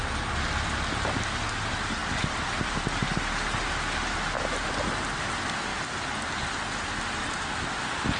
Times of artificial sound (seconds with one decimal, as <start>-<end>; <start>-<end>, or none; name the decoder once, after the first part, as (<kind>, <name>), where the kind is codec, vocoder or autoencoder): 2.0-4.4 (vocoder, BigVGAN v2)